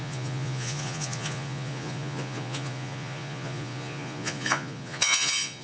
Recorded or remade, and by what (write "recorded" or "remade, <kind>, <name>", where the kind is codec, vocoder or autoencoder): remade, vocoder, Vocos